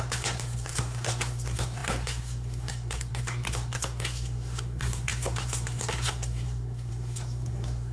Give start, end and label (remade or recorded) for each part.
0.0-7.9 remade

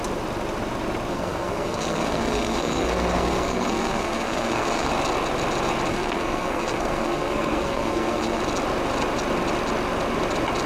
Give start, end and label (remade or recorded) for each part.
0.0-1.1 recorded; 1.1-4.9 remade; 4.9-5.9 recorded; 5.9-8.4 remade; 8.4-10.7 recorded

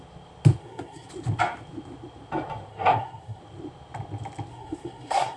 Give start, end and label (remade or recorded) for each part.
0.0-0.6 recorded; 0.6-1.1 remade; 1.1-2.7 recorded; 2.7-3.4 remade; 3.4-4.5 recorded; 4.5-5.4 remade

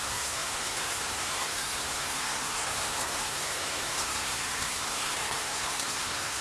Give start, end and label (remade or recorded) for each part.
0.0-6.4 remade

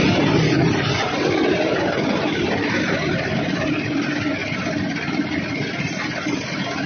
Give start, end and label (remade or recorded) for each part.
0.0-6.9 recorded